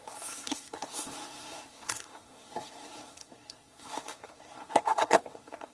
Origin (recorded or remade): remade